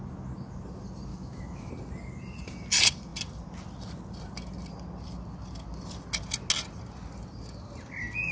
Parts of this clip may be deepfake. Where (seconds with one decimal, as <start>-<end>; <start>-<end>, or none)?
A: 1.1-1.7